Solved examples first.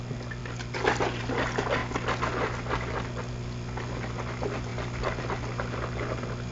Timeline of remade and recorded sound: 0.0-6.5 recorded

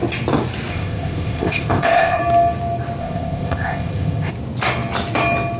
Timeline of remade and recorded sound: 0.0-0.7 recorded; 0.7-2.2 remade; 2.2-3.0 recorded; 3.0-4.3 remade; 4.3-5.6 recorded

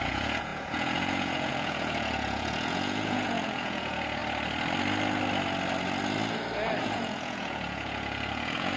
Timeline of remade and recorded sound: 0.0-4.2 remade; 4.2-6.8 recorded; 6.8-8.8 remade

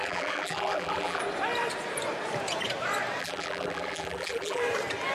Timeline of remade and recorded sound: 0.0-1.2 remade; 1.2-3.2 recorded; 3.2-4.6 remade; 4.6-5.1 recorded

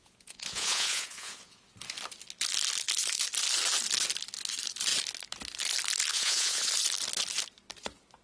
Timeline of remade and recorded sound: 0.0-1.6 remade; 1.6-6.1 recorded; 6.1-6.7 remade; 6.7-8.2 recorded

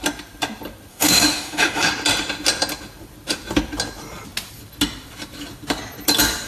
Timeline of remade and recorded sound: 0.0-0.9 recorded; 0.9-1.9 remade; 1.9-6.5 recorded

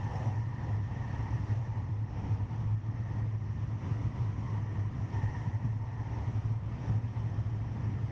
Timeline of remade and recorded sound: 0.0-0.5 recorded; 0.5-2.3 remade; 2.3-5.3 recorded; 5.3-7.6 remade; 7.6-8.1 recorded